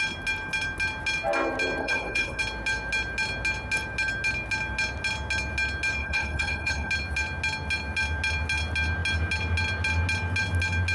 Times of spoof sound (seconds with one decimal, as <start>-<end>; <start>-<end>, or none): 1.8-2.4; 6.0-6.9